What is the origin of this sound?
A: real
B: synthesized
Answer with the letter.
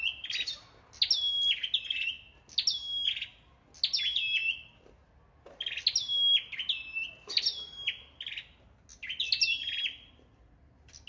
A